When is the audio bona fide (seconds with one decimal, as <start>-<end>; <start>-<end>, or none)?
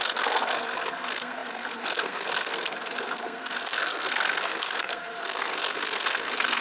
none